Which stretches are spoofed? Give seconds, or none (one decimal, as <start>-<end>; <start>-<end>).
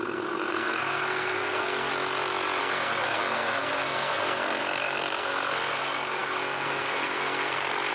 0.0-1.9; 2.6-7.9